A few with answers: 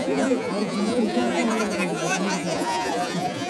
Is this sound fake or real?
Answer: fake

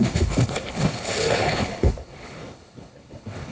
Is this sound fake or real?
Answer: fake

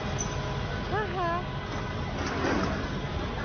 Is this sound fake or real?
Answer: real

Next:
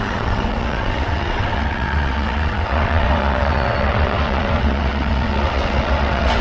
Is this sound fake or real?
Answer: fake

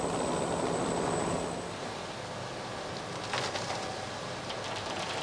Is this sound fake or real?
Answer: real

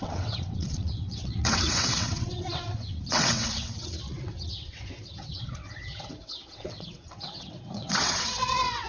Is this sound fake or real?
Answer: fake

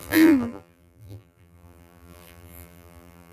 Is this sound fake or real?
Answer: fake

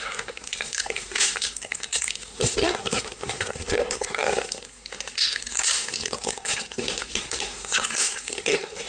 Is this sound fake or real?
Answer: fake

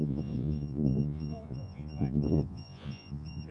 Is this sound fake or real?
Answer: fake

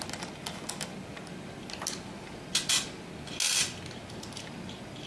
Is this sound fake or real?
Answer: real